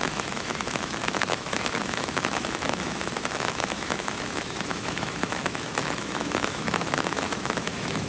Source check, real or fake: fake